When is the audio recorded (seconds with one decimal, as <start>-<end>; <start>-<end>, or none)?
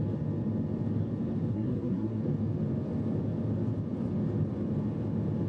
0.0-1.5; 2.2-5.5